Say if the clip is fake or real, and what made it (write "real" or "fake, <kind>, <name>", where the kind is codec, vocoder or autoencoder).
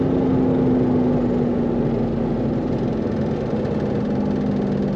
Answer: real